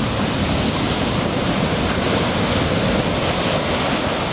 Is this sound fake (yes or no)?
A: no